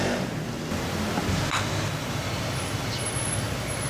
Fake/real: real